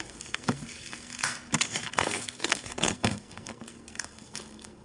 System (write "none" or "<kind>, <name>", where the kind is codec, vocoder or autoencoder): codec, SNAC